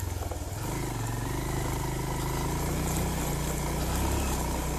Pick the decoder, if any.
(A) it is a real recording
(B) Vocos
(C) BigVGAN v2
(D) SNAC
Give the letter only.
A